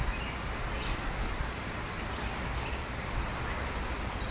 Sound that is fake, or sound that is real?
real